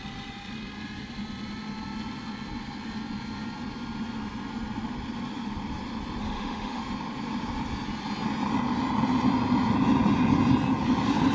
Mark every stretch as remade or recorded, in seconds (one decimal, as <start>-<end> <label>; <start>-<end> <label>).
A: 0.0-6.2 recorded; 6.2-6.8 remade; 6.8-11.3 recorded

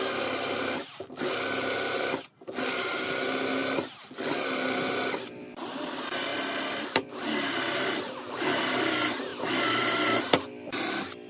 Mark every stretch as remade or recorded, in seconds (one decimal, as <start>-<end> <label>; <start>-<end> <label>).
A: 0.0-11.3 recorded

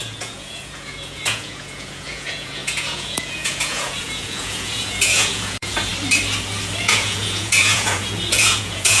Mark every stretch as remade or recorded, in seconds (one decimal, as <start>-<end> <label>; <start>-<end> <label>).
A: 0.0-5.9 remade; 5.9-6.8 recorded; 6.8-9.0 remade

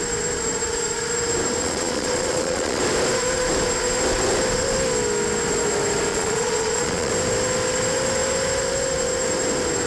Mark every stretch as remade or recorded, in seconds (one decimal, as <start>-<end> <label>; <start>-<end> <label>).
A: 0.0-1.6 recorded; 1.6-2.8 remade; 2.8-6.1 recorded; 6.1-7.1 remade; 7.1-9.9 recorded